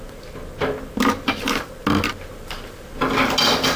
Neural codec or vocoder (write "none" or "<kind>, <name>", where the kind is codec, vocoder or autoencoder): none